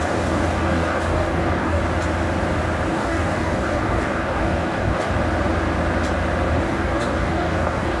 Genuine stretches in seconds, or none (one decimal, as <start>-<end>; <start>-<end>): 1.8-2.9; 5.1-6.5